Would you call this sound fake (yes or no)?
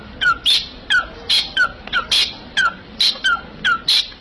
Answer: yes